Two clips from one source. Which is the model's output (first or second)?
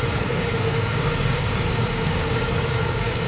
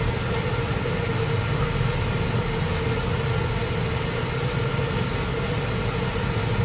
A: first